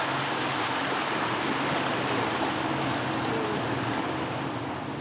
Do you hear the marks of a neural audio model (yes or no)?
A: no